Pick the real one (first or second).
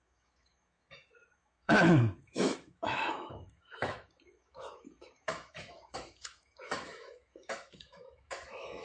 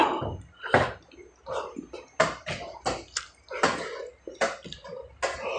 second